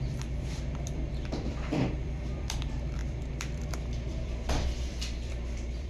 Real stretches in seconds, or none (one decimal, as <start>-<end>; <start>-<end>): none